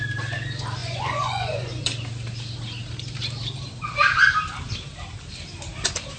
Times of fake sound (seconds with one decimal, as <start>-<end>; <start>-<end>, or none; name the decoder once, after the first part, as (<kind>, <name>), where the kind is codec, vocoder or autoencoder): 0.8-1.8 (vocoder, Vocos)